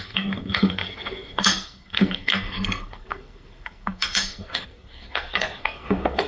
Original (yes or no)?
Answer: no